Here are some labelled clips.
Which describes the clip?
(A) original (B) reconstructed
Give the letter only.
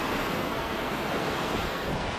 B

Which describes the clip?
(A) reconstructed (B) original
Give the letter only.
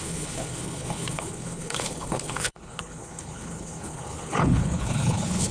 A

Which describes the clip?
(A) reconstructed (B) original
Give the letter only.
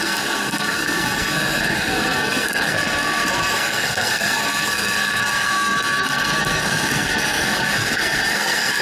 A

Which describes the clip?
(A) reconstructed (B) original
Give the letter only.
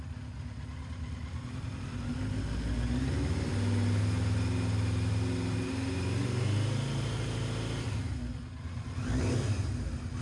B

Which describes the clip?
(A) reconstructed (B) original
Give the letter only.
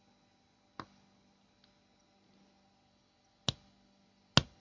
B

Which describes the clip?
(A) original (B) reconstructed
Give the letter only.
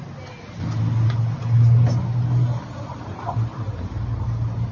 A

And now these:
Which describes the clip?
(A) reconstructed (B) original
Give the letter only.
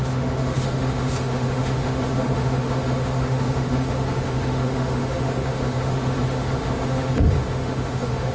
A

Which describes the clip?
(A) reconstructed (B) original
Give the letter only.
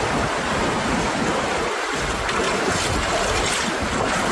B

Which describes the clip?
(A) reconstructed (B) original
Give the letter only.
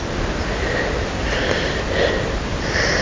B